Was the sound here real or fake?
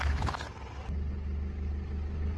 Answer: real